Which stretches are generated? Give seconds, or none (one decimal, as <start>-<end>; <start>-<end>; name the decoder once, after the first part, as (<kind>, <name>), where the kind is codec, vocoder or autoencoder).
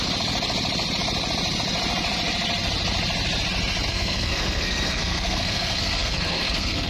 3.9-6.9 (codec, SNAC)